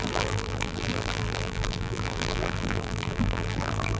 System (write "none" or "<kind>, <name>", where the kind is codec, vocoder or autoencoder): vocoder, BigVGAN v2